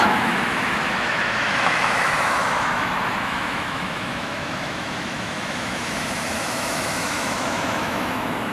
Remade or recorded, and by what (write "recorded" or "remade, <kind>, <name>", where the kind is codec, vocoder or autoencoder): remade, autoencoder, DAC-VAE